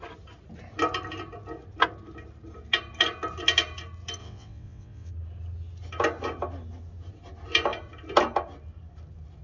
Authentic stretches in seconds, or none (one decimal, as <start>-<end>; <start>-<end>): 0.0-4.2; 5.1-9.4